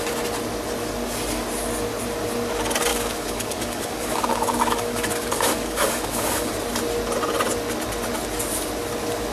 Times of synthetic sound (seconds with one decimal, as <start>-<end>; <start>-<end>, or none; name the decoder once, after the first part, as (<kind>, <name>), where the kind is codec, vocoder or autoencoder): 2.9-6.5 (codec, DAC)